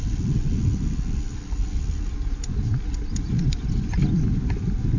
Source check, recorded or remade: recorded